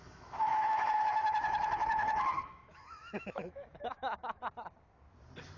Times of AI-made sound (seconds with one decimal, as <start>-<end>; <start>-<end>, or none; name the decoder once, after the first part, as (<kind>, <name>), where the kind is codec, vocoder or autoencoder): 0.0-4.4 (autoencoder, DAC-VAE)